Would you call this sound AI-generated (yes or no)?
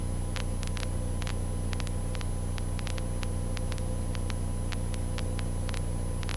no